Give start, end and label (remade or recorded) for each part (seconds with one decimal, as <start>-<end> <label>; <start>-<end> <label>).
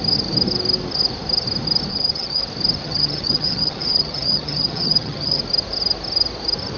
0.0-1.9 recorded; 1.9-2.4 remade; 2.4-2.8 recorded; 2.8-5.4 remade; 5.4-6.8 recorded